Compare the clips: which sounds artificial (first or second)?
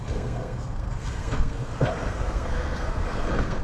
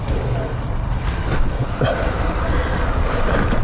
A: first